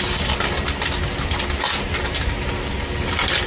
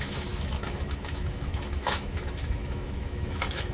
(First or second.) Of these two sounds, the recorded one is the first